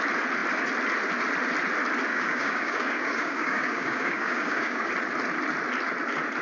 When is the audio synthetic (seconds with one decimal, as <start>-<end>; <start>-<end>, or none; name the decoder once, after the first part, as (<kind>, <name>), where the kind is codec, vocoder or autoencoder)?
2.1-4.9 (codec, DAC)

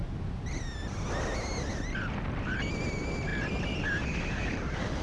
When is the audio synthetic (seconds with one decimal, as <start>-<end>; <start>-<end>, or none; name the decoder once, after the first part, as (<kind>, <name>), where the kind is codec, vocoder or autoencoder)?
none

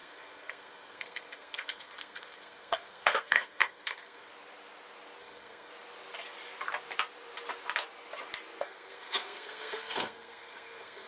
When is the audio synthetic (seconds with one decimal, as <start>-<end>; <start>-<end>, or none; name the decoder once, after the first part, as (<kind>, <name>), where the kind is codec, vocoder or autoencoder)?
0.0-4.3 (codec, SNAC); 5.2-5.7; 8.6-11.1

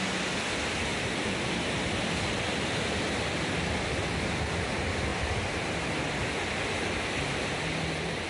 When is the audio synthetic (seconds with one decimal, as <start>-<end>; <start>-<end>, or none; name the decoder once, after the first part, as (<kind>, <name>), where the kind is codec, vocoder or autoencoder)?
5.1-5.7 (vocoder, BigVGAN v2)

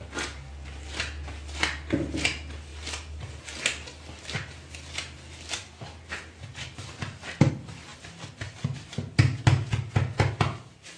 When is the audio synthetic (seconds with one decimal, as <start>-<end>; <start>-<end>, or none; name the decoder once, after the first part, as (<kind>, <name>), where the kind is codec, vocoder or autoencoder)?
2.7-7.5 (vocoder, BigVGAN v2)

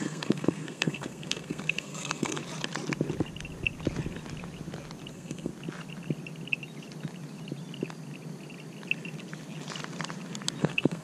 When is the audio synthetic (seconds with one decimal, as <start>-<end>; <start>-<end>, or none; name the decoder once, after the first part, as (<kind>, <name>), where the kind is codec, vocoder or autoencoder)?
0.0-2.4 (codec, SNAC); 5.1-5.5; 10.6-11.0

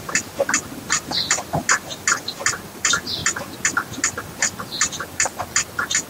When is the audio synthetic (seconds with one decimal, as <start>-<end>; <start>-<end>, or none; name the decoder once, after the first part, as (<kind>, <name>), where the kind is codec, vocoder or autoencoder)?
none

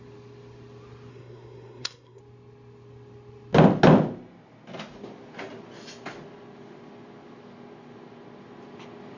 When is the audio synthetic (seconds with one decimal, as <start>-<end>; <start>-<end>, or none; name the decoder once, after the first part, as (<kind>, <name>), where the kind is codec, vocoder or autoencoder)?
1.1-2.2 (codec, SNAC)